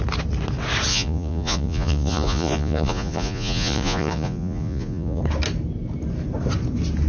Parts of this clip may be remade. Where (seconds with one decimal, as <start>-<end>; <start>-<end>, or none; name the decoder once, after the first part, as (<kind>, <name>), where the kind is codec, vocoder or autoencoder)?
0.9-5.2 (vocoder, Vocos)